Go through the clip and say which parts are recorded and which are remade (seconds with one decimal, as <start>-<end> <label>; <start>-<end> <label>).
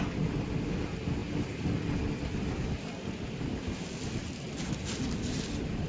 0.0-5.9 recorded